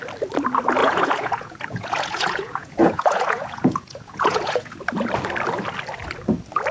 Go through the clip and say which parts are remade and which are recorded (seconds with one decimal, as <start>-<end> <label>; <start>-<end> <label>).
0.0-0.8 recorded; 0.8-4.8 remade; 4.8-6.7 recorded